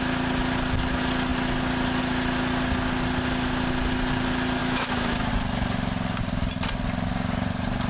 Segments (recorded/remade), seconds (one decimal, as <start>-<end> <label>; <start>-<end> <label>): 0.0-4.6 recorded; 4.6-5.3 remade; 5.3-7.9 recorded